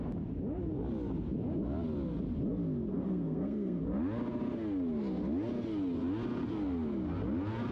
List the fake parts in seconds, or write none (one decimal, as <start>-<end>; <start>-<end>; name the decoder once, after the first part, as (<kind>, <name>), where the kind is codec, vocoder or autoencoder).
2.9-3.8 (codec, SNAC)